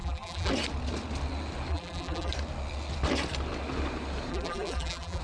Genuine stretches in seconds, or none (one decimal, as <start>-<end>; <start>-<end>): 0.5-1.7; 2.3-4.3